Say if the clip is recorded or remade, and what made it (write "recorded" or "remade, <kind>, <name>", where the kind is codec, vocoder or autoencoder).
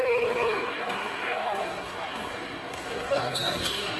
remade, codec, SNAC